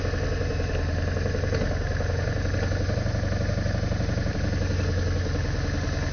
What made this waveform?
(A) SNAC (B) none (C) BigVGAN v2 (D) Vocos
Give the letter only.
B